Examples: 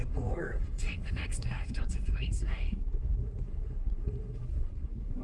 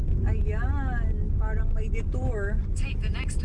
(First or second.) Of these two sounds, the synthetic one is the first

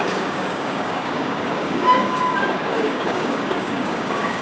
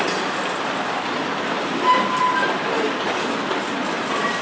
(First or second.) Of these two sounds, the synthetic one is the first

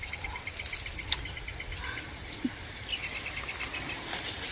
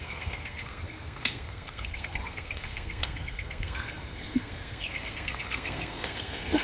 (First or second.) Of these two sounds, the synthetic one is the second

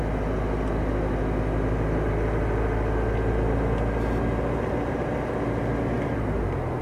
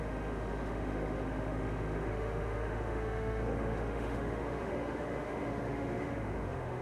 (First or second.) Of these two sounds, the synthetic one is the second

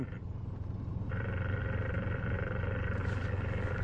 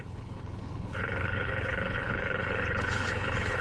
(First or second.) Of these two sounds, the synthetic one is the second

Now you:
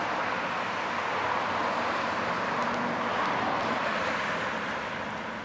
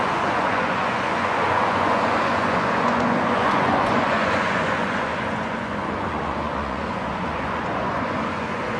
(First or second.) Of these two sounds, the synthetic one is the second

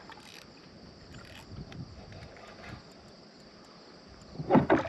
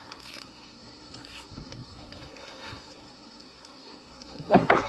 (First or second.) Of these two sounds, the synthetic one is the second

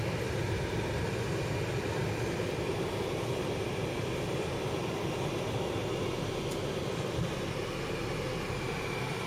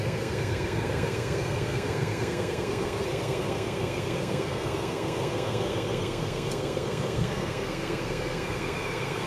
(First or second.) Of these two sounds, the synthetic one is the second